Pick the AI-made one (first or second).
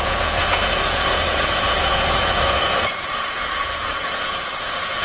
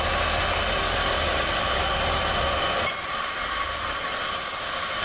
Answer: first